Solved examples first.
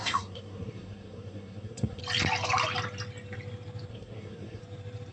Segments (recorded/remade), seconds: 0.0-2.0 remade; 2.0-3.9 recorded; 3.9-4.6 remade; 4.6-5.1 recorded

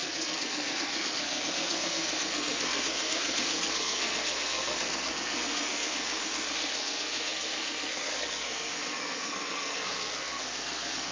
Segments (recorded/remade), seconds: 0.0-11.1 remade

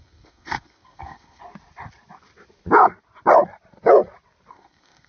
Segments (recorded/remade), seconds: 0.0-1.4 remade; 1.4-4.5 recorded; 4.5-5.1 remade